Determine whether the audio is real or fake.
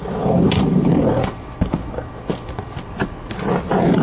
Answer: real